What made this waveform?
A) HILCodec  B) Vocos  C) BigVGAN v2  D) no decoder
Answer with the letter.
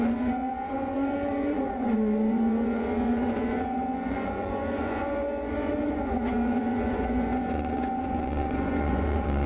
B